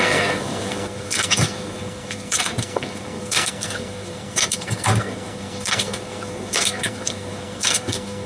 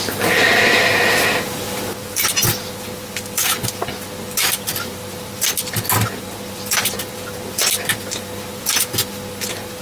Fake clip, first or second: first